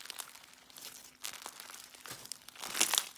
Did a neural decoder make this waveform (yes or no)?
no